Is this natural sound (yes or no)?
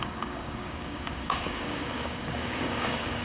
no